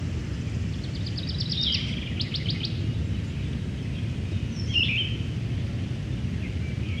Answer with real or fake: real